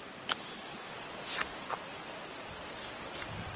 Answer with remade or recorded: recorded